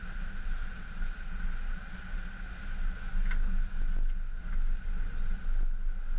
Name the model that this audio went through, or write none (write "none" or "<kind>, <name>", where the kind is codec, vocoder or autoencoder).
none